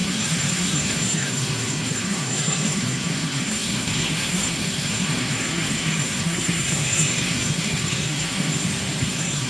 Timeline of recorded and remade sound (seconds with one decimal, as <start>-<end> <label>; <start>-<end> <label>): 0.0-8.5 remade; 8.5-9.0 recorded; 9.0-9.5 remade